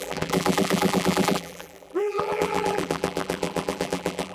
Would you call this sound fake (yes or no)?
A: yes